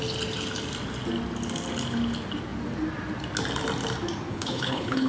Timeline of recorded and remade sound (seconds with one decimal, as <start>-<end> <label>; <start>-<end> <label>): 0.0-4.3 recorded; 4.3-5.1 remade